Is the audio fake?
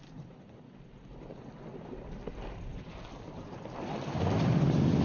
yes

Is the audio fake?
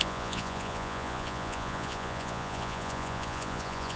yes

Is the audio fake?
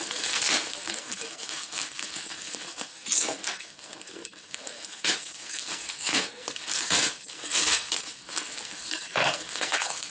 yes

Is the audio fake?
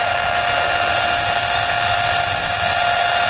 no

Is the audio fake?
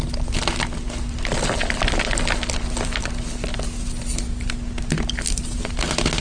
no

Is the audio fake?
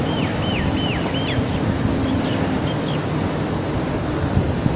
yes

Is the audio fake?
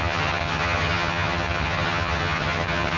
yes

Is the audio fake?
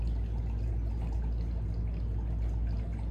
no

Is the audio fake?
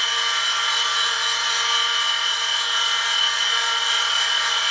no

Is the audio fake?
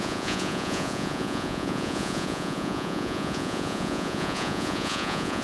yes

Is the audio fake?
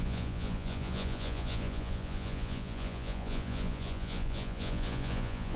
yes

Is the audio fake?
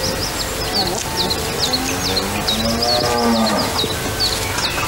no